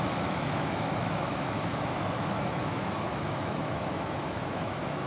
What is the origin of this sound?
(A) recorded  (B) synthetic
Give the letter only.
B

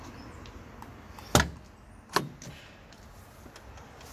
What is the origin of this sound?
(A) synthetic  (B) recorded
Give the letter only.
B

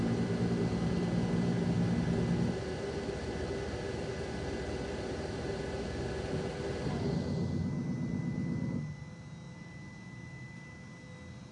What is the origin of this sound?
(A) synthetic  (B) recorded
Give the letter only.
B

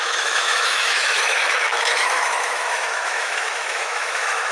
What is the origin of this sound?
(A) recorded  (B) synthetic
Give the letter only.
B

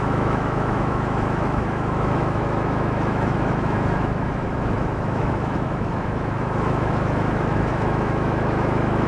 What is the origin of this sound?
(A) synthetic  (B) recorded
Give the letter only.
A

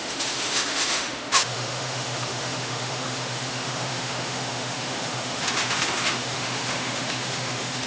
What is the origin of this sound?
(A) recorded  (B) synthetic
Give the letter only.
B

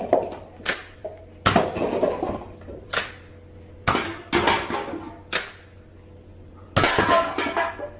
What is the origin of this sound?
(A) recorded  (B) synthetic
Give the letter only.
A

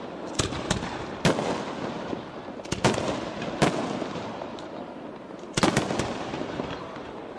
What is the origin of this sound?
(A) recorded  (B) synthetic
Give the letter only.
A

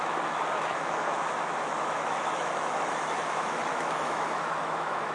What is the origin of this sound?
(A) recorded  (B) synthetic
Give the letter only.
B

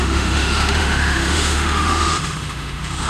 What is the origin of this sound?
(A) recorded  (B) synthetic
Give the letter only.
B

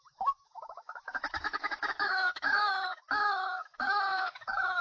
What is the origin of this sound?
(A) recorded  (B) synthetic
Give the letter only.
B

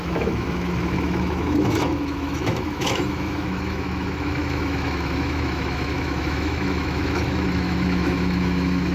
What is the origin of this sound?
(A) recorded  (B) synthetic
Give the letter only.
B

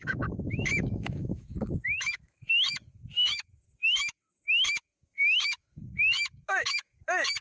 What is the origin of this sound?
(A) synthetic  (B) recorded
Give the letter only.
A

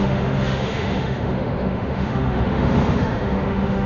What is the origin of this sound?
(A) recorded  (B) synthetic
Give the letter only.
B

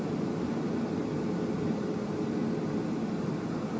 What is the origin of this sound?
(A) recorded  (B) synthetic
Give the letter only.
A